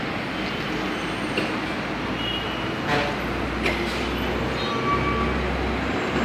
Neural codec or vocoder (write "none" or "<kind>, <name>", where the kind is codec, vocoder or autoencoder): none